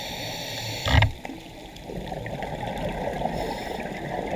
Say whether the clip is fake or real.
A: real